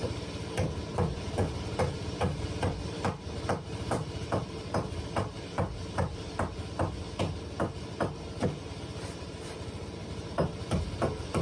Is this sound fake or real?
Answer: fake